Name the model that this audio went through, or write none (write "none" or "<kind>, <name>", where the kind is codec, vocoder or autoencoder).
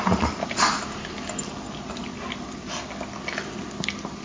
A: none